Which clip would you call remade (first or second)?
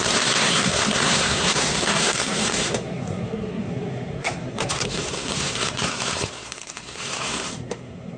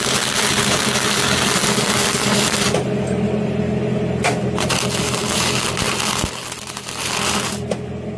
first